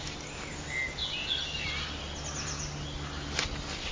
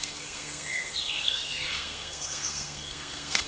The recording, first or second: first